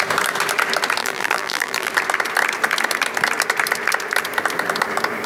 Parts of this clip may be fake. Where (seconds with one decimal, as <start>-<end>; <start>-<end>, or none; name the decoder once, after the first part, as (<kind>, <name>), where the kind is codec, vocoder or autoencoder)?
1.0-1.9 (vocoder, BigVGAN v2)